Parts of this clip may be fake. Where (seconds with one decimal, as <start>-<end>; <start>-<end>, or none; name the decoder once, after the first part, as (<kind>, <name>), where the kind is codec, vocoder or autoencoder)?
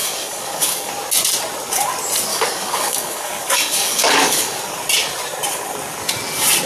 0.0-0.9 (codec, DAC); 2.3-4.6